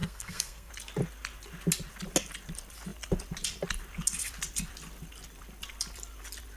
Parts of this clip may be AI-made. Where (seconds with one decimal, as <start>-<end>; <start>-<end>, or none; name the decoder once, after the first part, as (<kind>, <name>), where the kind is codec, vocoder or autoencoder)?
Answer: 0.0-0.7 (codec, SNAC)